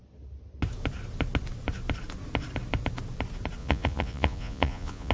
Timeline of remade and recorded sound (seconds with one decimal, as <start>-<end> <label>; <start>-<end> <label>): 0.0-3.6 recorded; 3.6-5.1 remade